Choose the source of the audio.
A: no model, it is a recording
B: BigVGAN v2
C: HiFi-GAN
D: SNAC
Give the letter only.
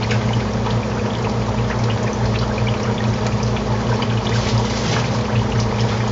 A